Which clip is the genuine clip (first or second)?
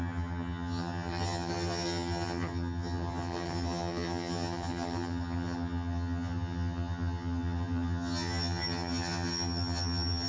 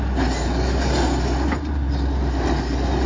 second